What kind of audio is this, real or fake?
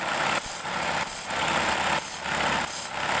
real